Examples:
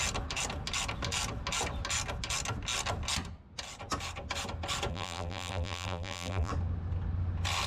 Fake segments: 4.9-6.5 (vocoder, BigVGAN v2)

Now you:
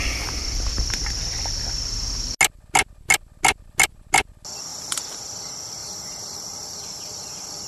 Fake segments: 4.7-5.2 (vocoder, BigVGAN v2); 5.8-7.7